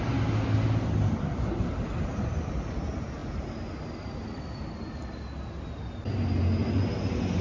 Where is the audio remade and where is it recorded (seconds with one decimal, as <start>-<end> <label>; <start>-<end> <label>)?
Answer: 0.0-7.4 recorded